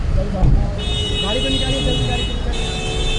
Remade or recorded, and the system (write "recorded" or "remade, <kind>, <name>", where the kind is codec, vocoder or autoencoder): recorded